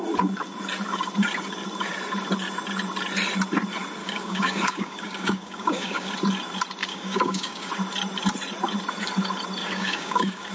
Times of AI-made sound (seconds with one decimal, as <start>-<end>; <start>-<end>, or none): 4.0-6.1; 6.8-7.7; 9.6-10.5